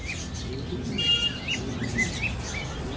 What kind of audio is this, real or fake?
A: real